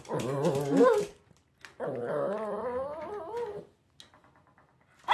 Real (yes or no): yes